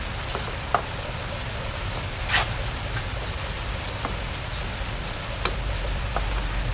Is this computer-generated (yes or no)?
no